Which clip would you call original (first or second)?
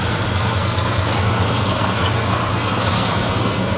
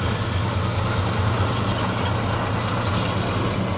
second